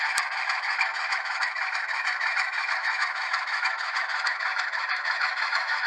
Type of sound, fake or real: fake